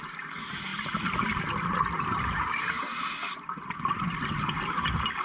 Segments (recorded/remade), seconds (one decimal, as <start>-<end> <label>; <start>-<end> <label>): 0.0-5.2 recorded